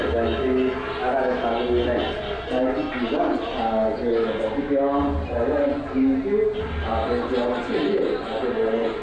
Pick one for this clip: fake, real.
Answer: real